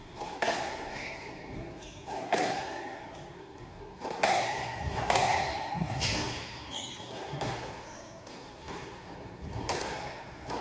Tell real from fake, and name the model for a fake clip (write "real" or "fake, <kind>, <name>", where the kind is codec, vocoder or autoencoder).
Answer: fake, codec, SNAC